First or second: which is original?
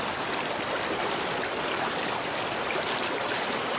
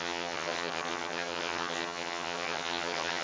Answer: first